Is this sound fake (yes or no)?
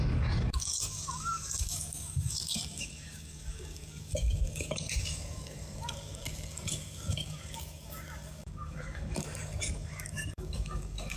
yes